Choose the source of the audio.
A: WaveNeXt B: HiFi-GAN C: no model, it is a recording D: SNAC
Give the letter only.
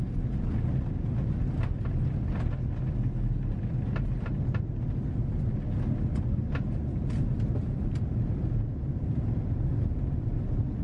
C